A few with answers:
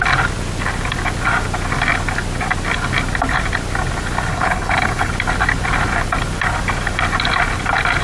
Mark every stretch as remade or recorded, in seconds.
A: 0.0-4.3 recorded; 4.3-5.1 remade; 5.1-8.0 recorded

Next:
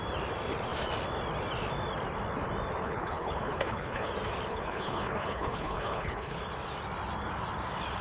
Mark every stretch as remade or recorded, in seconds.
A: 0.0-2.8 recorded; 2.8-4.1 remade; 4.1-4.5 recorded; 4.5-6.4 remade; 6.4-8.0 recorded

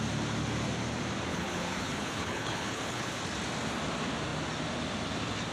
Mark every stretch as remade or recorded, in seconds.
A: 0.0-1.3 recorded; 1.3-3.2 remade; 3.2-5.5 recorded

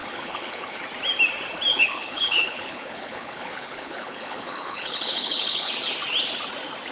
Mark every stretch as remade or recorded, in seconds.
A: 0.0-0.8 remade; 0.8-1.7 recorded; 1.7-5.7 remade; 5.7-6.9 recorded